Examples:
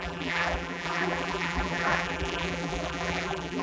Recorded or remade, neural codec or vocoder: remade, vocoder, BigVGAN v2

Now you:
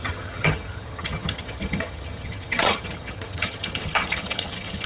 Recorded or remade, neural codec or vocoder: remade, vocoder, HiFi-GAN